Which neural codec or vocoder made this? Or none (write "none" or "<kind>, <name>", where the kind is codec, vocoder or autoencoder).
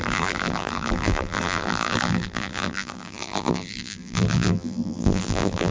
vocoder, BigVGAN v2